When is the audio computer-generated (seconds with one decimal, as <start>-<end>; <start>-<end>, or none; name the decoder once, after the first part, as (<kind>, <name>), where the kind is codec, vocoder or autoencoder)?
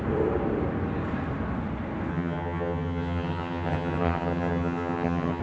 2.1-5.4 (vocoder, HiFi-GAN)